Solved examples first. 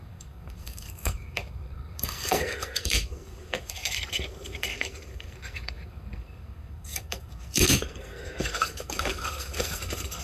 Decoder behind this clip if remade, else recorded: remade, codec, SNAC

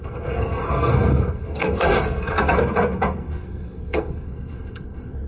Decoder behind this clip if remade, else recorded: remade, codec, SNAC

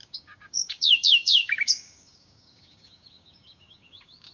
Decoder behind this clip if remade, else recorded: remade, codec, DAC